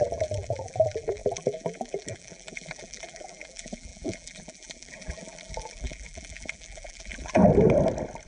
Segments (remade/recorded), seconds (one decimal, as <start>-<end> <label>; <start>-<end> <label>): 0.0-7.4 remade; 7.4-8.3 recorded